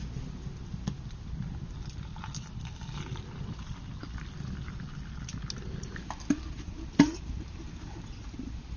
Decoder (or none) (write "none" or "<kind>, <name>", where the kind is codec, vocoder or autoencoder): none